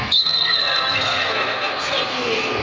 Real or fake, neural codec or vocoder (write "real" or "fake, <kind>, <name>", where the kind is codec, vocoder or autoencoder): fake, codec, SNAC